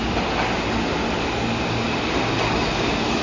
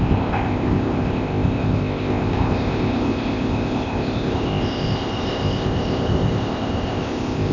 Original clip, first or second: first